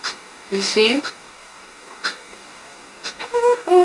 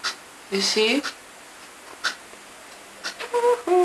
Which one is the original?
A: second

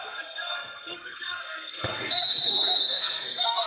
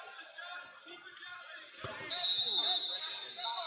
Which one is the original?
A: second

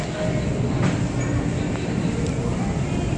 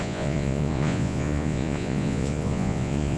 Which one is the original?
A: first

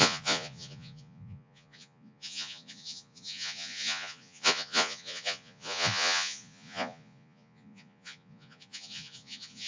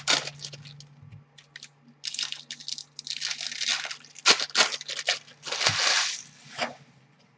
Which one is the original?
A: second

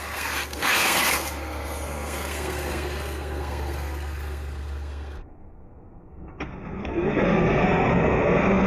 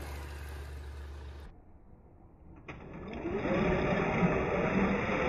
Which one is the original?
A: second